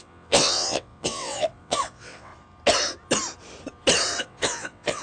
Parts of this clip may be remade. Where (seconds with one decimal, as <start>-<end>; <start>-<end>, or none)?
0.0-2.3; 4.2-5.0